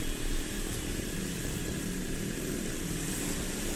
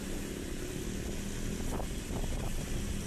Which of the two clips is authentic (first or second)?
second